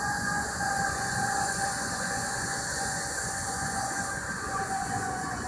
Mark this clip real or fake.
fake